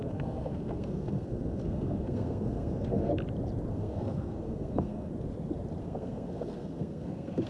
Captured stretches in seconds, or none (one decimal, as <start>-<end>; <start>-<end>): 3.1-3.7; 5.1-5.8